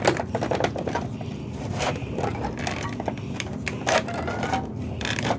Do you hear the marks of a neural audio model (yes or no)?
yes